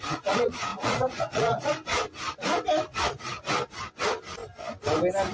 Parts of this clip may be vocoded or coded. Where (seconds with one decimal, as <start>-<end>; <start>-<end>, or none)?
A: 0.0-1.7